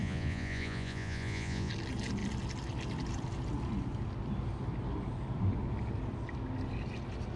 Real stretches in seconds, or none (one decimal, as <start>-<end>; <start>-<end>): 1.7-7.4